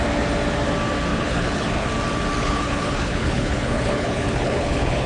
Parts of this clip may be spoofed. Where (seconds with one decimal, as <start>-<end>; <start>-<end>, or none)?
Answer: 1.1-1.9; 2.4-5.1

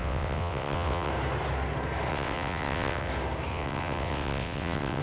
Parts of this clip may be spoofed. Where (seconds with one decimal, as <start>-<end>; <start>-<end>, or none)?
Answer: 0.0-1.1; 2.1-3.1; 3.5-5.0

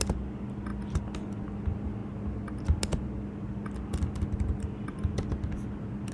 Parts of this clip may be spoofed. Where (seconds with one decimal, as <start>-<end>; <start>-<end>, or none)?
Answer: none

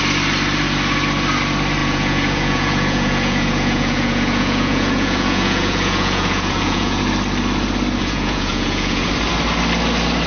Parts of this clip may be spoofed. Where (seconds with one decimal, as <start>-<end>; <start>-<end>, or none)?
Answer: 1.8-7.0; 8.0-9.1